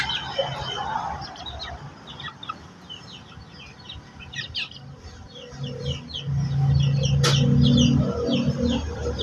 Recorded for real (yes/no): yes